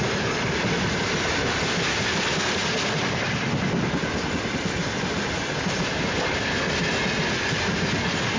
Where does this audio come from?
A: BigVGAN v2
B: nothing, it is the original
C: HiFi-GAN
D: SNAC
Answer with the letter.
B